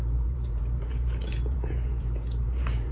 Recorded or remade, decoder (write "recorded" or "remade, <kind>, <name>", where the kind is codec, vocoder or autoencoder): remade, vocoder, Vocos